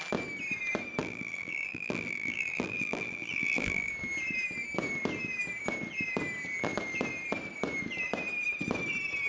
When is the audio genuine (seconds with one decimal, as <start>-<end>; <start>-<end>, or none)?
0.0-1.0; 3.9-9.3